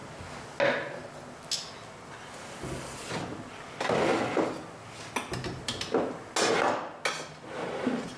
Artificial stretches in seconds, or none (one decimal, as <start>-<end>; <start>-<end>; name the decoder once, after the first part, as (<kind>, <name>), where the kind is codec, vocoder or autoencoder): none